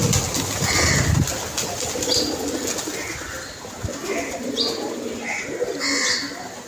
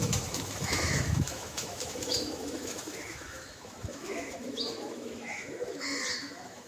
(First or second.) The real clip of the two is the first